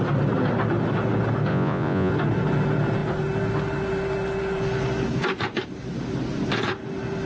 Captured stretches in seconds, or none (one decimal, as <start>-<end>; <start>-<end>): 0.0-1.5; 2.1-7.3